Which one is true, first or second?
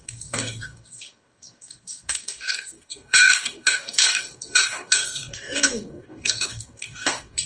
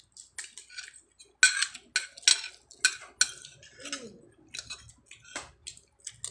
second